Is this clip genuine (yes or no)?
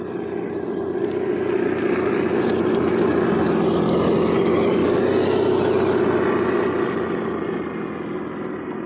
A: yes